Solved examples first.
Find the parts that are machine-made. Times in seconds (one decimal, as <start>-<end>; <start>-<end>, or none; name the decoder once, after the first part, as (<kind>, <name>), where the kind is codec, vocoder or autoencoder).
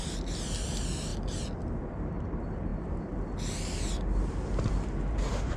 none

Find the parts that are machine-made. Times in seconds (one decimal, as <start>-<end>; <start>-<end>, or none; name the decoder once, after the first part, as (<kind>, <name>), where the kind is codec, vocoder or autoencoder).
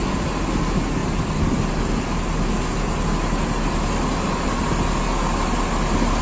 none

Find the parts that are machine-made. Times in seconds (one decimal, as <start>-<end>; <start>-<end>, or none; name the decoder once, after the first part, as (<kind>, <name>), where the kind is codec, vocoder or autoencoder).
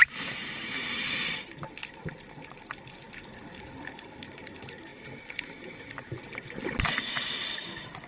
4.9-7.1 (vocoder, BigVGAN v2)